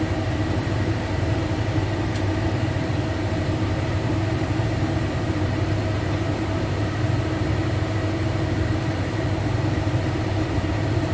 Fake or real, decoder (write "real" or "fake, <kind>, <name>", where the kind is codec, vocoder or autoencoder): fake, vocoder, BigVGAN v2